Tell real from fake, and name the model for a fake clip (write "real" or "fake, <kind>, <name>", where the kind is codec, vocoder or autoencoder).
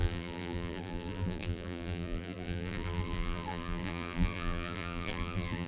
fake, vocoder, BigVGAN v2